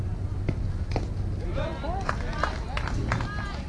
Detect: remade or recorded recorded